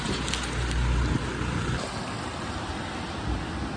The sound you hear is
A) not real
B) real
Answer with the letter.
B